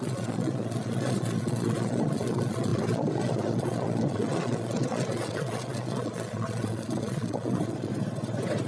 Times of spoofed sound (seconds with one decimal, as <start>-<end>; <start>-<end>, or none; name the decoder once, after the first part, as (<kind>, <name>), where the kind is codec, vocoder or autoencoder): 0.0-7.9 (vocoder, Vocos)